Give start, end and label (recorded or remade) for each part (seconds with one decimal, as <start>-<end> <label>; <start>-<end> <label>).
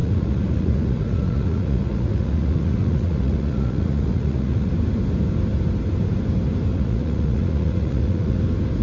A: 0.0-4.7 remade; 4.7-6.7 recorded; 6.7-8.4 remade; 8.4-8.8 recorded